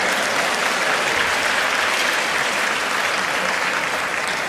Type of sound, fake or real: real